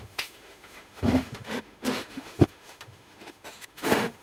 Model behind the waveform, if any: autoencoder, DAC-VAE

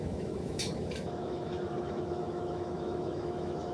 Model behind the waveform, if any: autoencoder, DAC-VAE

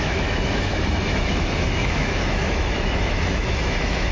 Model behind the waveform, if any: autoencoder, DAC-VAE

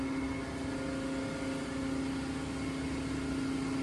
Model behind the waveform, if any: none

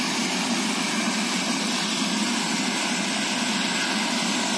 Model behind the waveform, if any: none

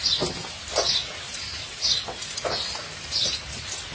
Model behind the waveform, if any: none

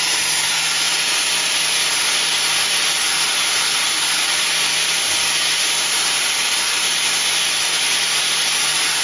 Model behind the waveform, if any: none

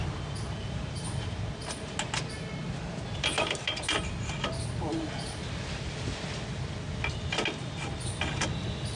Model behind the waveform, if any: none